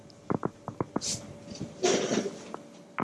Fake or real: real